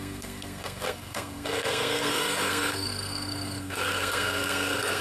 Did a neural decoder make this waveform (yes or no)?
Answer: yes